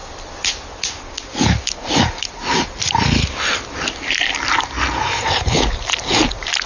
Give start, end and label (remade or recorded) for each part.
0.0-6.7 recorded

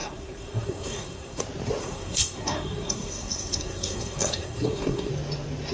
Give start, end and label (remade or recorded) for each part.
0.0-1.4 remade; 1.4-1.8 recorded; 1.8-5.1 remade; 5.1-5.7 recorded

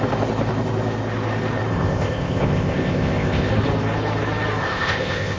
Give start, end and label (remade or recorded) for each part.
0.0-1.7 recorded; 1.7-3.5 remade; 3.5-4.6 recorded; 4.6-5.4 remade

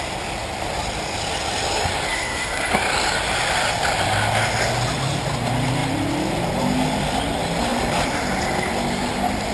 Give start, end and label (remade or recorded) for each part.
0.0-2.1 recorded; 2.1-2.7 remade; 2.7-9.5 recorded

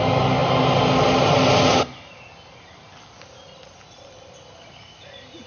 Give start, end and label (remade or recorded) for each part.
0.0-5.5 recorded

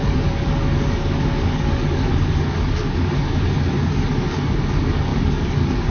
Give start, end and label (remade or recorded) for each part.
0.0-5.9 remade

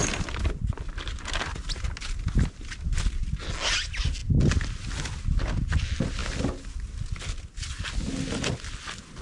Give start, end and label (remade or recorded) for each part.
0.0-9.2 recorded